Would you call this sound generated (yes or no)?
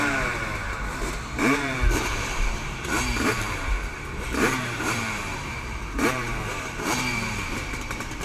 yes